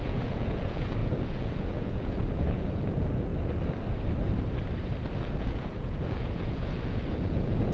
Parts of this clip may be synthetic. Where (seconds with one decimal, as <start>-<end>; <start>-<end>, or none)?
0.0-3.3; 5.4-7.7